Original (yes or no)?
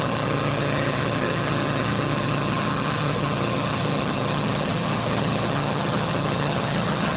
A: no